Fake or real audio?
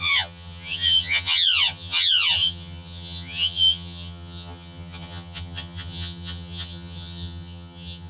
fake